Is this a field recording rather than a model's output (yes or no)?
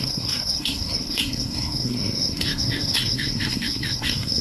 no